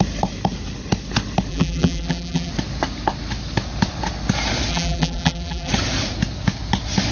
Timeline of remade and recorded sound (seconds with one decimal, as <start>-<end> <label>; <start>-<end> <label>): 0.0-1.5 recorded; 1.5-2.5 remade; 2.5-4.7 recorded; 4.7-5.7 remade; 5.7-7.1 recorded